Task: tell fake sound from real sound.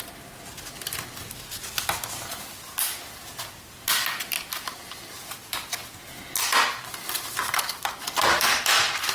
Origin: real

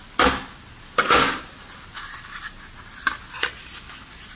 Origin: real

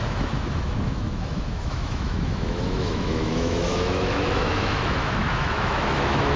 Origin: fake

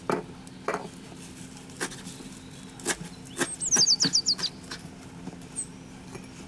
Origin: real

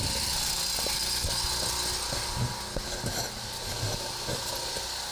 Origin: real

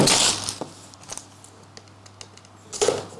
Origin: real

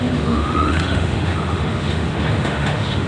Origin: fake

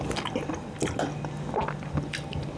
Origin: real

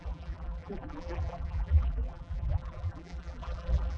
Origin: fake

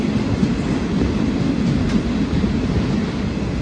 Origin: real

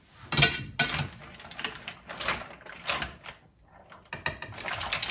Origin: real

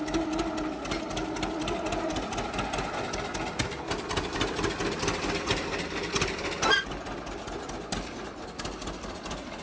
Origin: real